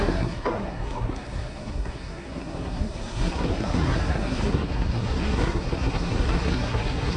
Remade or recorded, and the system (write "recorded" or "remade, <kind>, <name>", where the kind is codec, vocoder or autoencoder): remade, codec, SNAC